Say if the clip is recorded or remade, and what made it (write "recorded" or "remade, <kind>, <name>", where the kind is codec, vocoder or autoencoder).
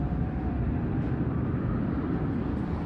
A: remade, vocoder, BigVGAN v2